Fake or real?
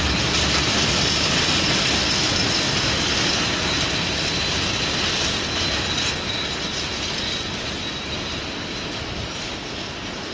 real